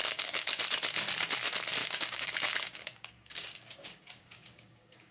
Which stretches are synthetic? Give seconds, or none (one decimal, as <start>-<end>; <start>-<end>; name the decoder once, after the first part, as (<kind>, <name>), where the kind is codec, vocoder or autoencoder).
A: 0.0-0.6 (codec, DAC); 1.8-5.1